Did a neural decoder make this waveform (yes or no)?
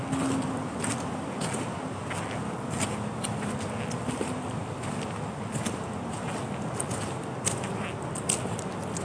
no